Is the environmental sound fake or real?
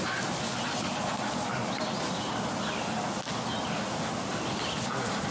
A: real